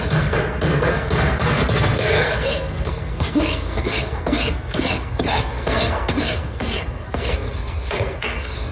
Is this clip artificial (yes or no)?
yes